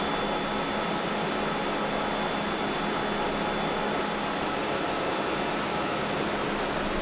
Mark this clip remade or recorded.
recorded